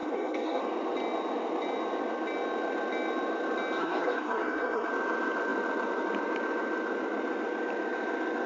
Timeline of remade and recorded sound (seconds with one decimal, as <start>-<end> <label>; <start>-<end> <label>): 0.0-0.6 remade; 0.6-3.8 recorded; 3.8-4.9 remade; 4.9-8.5 recorded